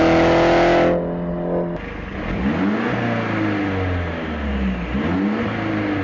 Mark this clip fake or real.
real